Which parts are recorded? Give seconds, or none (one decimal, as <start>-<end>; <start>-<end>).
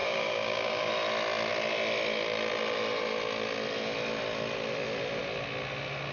0.9-6.1